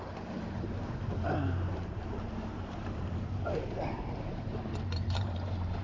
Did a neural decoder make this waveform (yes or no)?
yes